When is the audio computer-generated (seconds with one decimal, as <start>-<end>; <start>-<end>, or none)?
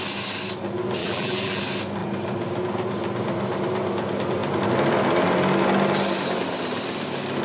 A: 1.0-1.6